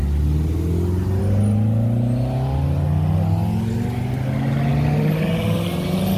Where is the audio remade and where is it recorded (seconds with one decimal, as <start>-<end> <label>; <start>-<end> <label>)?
0.0-6.2 recorded